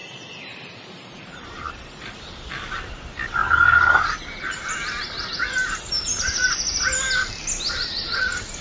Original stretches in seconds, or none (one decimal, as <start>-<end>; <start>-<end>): 1.4-3.4; 6.8-8.6